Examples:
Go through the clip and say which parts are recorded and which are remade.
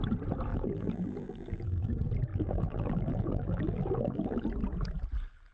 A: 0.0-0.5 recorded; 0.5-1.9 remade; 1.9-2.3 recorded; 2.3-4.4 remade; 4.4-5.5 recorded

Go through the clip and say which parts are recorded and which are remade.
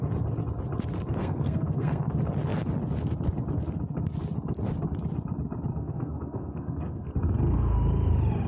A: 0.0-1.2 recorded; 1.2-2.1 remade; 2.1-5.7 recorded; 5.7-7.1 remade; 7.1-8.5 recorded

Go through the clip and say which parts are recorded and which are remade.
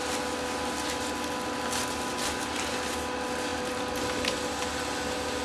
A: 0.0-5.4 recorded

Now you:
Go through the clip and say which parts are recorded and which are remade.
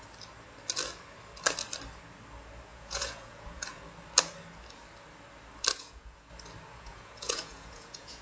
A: 0.0-2.7 recorded; 2.7-3.8 remade; 3.8-5.7 recorded; 5.7-6.3 remade; 6.3-6.7 recorded; 6.7-8.2 remade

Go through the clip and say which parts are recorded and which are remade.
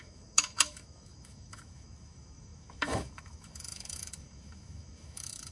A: 0.0-5.5 remade